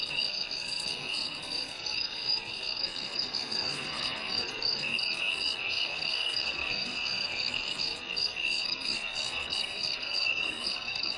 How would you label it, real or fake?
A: fake